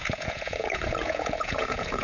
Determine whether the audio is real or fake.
fake